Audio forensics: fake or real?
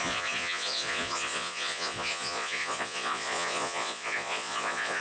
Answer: fake